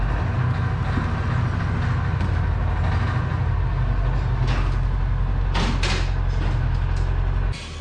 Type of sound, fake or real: real